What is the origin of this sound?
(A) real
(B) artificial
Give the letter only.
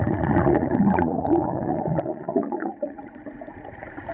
B